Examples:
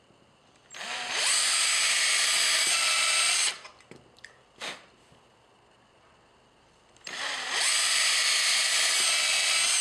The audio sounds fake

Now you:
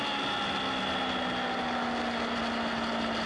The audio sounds real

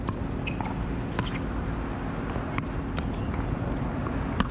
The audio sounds real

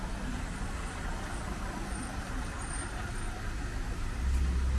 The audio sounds real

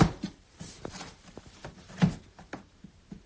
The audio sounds fake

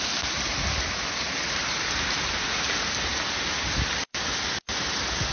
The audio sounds real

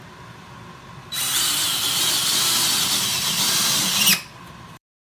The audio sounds fake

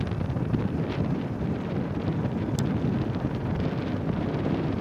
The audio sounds fake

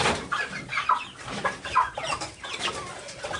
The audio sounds fake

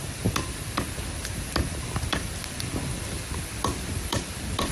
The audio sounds fake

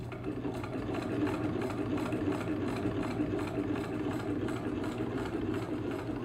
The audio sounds real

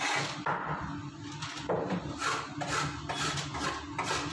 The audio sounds real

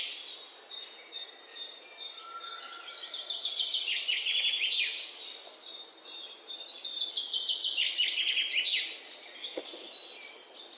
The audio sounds real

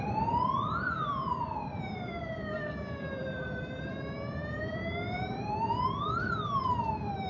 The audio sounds fake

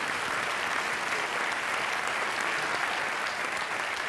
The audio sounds real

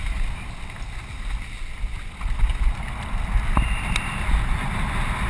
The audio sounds real